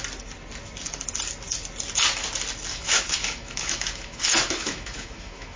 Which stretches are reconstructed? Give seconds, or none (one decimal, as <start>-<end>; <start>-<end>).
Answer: 2.7-5.6